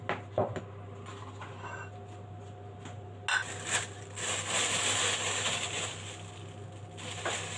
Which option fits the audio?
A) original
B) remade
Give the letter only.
A